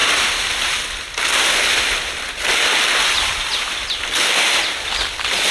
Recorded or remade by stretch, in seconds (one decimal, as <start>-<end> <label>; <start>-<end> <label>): 0.0-5.5 recorded